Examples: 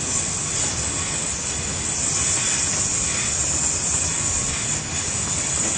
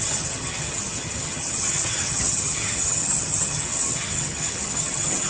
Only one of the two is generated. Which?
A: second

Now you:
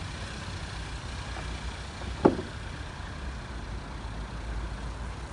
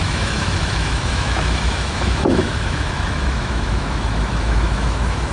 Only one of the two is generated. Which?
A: second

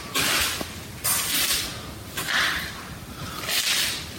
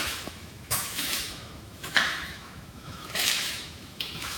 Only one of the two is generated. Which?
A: second